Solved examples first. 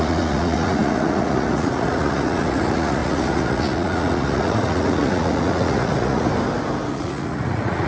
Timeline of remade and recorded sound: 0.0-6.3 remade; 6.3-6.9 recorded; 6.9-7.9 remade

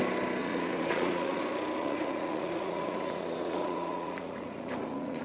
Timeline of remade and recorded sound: 0.0-0.4 recorded; 0.4-1.4 remade; 1.4-1.8 recorded; 1.8-5.2 remade

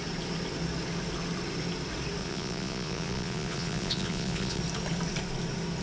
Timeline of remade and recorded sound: 0.0-2.2 recorded; 2.2-4.6 remade; 4.6-5.8 recorded

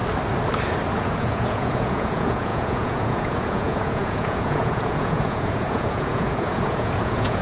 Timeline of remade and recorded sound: 0.0-0.9 recorded; 0.9-7.4 remade